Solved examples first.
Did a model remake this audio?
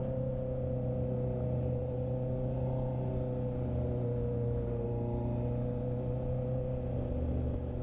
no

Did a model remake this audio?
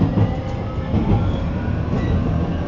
no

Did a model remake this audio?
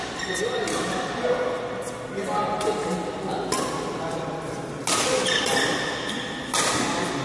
no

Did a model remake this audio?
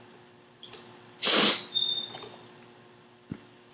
no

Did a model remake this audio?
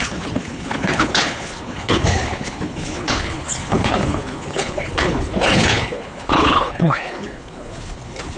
yes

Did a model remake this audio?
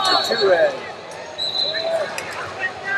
no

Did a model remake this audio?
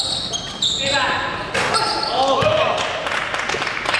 no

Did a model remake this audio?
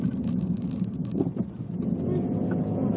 no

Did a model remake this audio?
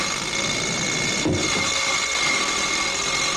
no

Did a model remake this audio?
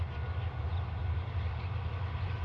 no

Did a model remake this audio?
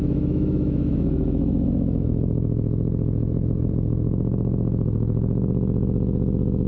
yes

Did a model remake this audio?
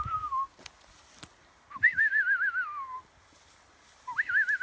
yes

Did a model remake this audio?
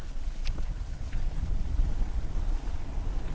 yes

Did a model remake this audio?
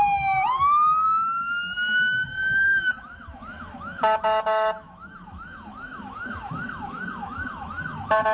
yes